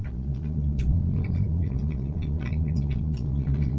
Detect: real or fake fake